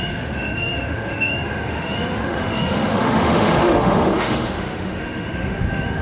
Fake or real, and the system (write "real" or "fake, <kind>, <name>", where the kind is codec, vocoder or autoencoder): fake, autoencoder, DAC-VAE